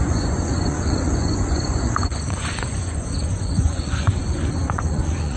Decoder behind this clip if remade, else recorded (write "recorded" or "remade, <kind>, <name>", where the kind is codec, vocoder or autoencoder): remade, vocoder, Vocos